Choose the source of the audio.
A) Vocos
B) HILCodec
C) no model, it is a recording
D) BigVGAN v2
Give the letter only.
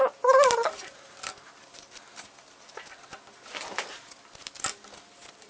C